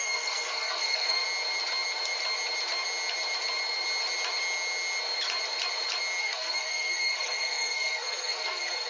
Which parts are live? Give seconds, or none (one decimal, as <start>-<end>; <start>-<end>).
1.2-6.2